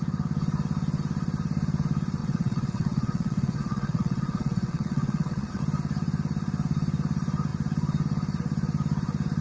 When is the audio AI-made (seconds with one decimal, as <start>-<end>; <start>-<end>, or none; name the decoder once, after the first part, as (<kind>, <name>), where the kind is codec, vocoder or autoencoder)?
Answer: 2.2-5.6 (vocoder, WaveNeXt)